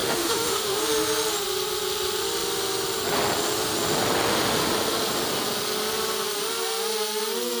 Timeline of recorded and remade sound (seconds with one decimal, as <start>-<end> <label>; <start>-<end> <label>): 0.0-0.8 remade; 0.8-7.6 recorded